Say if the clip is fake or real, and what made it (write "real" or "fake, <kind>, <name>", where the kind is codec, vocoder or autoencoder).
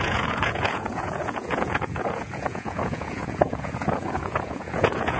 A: fake, vocoder, Vocos